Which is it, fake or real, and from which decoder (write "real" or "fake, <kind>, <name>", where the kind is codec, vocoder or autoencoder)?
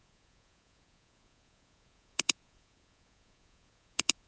fake, vocoder, Vocos